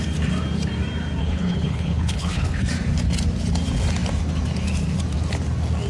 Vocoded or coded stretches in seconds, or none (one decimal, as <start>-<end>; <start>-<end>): 1.2-2.6